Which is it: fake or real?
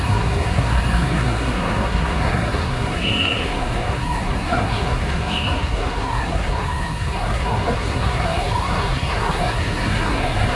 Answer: fake